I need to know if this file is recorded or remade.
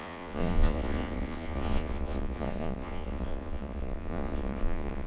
remade